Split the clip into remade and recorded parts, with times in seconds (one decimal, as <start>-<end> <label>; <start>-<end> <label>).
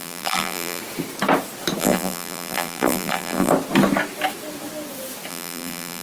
0.0-0.8 remade; 0.8-1.8 recorded; 1.8-3.5 remade; 3.5-5.3 recorded; 5.3-6.0 remade